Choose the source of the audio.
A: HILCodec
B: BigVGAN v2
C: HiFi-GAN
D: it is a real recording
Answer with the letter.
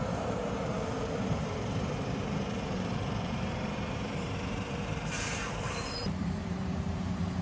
B